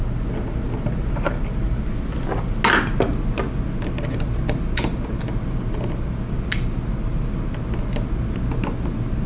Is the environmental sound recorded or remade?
recorded